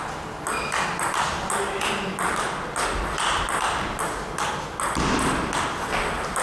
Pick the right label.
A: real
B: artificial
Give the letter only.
A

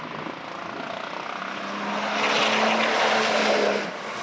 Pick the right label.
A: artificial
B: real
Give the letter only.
B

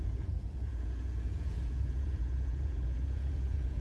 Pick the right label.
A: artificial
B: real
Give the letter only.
A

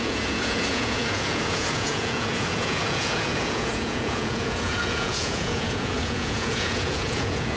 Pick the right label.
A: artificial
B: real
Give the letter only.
A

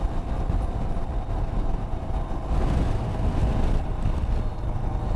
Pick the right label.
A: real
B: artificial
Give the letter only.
A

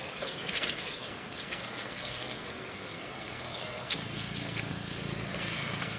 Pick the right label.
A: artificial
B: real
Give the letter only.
A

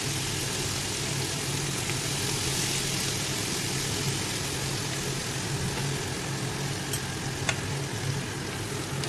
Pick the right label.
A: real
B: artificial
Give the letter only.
A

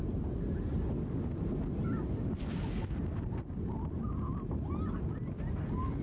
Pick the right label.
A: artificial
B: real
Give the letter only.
B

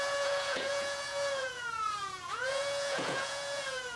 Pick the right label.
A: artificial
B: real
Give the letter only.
A